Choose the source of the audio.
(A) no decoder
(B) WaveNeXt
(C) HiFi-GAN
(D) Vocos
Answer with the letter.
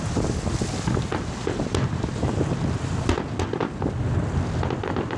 A